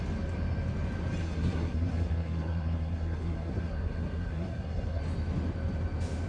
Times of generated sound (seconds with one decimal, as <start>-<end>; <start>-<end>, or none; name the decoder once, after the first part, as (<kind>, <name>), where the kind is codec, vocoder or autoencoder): 1.2-5.0 (codec, SNAC)